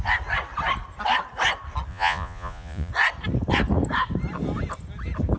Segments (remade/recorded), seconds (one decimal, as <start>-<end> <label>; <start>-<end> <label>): 0.0-1.9 recorded; 1.9-2.9 remade; 2.9-5.4 recorded

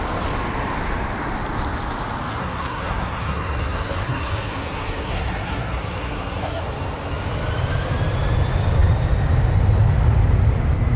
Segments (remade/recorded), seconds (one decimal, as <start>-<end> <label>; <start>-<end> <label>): 0.0-2.4 recorded; 2.4-6.6 remade; 6.6-11.0 recorded

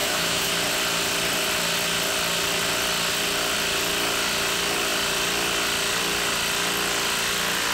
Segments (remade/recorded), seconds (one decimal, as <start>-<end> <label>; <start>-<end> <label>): 0.0-0.5 remade; 0.5-7.7 recorded

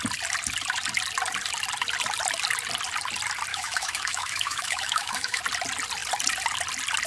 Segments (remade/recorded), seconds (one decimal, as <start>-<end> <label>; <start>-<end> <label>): 0.0-3.5 recorded; 3.5-5.4 remade; 5.4-7.1 recorded

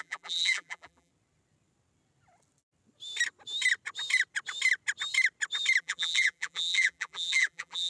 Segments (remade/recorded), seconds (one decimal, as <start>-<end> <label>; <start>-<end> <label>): 0.0-1.1 remade; 1.1-5.8 recorded; 5.8-7.9 remade

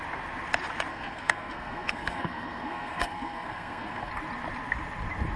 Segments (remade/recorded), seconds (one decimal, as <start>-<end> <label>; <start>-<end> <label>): 0.0-0.9 recorded; 0.9-4.1 remade; 4.1-5.4 recorded

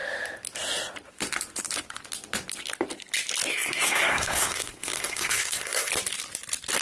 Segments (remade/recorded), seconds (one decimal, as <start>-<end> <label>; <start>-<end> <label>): 0.0-3.5 recorded; 3.5-5.9 remade; 5.9-6.8 recorded

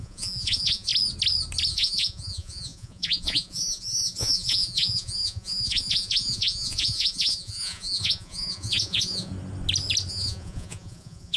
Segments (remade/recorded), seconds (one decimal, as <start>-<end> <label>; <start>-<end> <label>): 0.0-0.9 remade; 0.9-1.7 recorded; 1.7-9.3 remade; 9.3-10.1 recorded; 10.1-11.4 remade